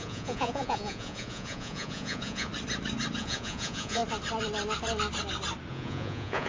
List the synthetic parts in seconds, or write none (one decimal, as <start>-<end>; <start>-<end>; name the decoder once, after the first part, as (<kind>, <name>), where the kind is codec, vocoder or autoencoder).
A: 0.0-2.5 (vocoder, Vocos); 3.2-4.0; 5.7-6.5